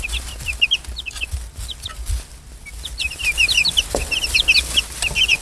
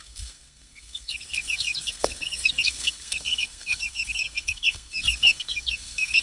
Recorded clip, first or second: first